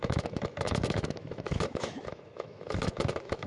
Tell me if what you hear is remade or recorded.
remade